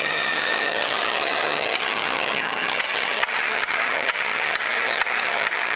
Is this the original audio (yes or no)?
no